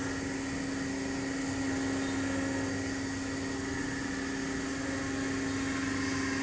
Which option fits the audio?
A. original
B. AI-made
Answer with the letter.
A